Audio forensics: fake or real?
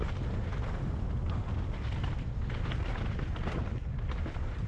real